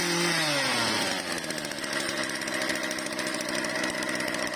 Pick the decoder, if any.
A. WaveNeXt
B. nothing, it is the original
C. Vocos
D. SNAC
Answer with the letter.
B